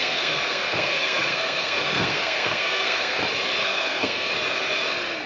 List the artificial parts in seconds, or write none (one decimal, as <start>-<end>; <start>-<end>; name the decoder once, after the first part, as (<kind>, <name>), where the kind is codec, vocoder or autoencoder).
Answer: 0.0-3.2 (codec, SNAC); 3.6-4.3